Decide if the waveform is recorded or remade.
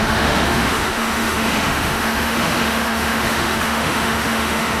remade